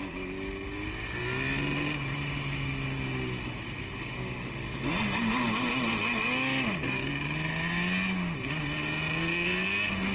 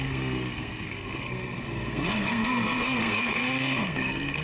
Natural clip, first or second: first